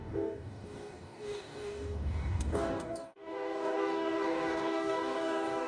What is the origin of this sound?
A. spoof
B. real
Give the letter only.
A